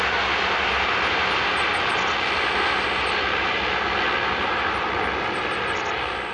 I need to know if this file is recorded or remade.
recorded